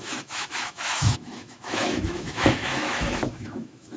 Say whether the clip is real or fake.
fake